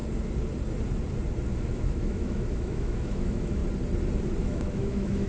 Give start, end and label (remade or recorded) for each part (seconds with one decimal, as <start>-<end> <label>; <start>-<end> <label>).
0.0-1.6 recorded; 1.6-3.6 remade; 3.6-4.4 recorded; 4.4-5.3 remade